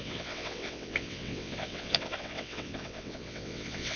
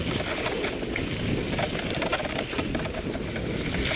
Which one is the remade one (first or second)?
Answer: first